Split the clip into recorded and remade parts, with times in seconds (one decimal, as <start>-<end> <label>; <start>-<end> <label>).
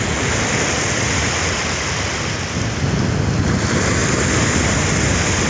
0.0-5.5 recorded